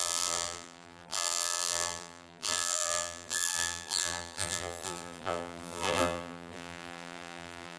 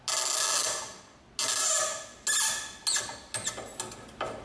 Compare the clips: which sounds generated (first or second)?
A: first